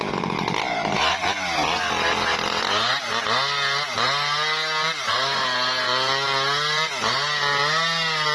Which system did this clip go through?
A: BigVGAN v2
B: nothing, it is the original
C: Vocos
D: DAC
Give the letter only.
B